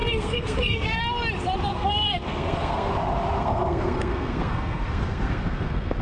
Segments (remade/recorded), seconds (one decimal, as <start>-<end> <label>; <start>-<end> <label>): 0.0-1.0 remade; 1.0-1.7 recorded; 1.7-2.9 remade; 2.9-3.4 recorded; 3.4-6.0 remade